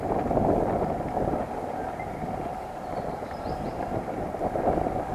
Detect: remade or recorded remade